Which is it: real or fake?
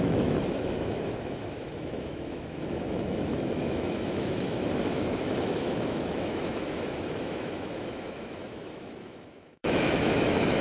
fake